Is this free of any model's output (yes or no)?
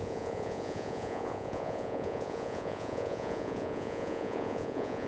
no